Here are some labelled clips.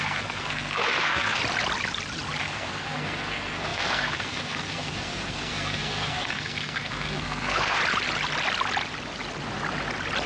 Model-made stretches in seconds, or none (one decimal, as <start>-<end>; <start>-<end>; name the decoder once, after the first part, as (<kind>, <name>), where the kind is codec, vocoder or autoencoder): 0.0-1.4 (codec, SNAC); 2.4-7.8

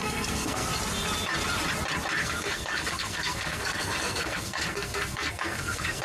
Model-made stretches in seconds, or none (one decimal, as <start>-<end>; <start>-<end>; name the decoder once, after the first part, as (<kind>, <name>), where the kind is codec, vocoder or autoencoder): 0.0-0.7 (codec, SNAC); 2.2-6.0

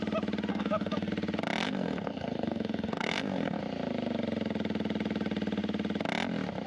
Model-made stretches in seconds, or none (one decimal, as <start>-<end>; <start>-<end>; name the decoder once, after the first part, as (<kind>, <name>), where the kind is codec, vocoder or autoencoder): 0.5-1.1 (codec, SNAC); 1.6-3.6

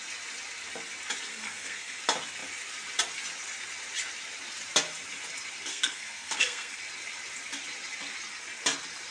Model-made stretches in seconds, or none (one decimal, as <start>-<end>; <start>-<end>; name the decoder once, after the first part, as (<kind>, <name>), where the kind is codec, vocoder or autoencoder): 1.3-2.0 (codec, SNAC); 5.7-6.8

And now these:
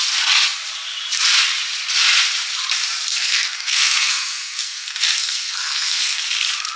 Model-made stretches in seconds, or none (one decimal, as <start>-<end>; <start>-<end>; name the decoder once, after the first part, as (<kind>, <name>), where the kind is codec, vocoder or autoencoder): 3.1-6.2 (codec, SNAC)

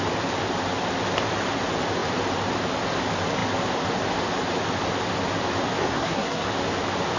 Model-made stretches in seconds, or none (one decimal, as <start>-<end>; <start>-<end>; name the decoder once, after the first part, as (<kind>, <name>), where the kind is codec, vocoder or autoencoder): 5.8-6.5 (codec, SNAC)